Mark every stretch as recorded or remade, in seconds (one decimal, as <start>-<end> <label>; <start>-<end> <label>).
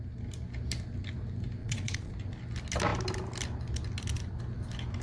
0.0-1.6 recorded; 1.6-2.1 remade; 2.1-5.0 recorded